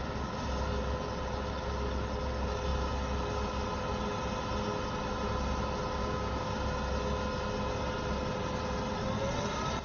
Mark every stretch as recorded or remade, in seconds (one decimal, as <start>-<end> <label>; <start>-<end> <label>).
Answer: 0.0-6.0 recorded; 6.0-6.6 remade; 6.6-9.8 recorded